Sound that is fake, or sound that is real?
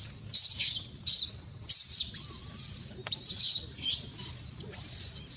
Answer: fake